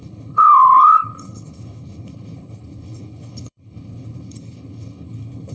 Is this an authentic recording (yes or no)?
no